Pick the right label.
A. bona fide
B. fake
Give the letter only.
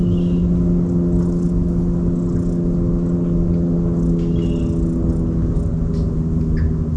A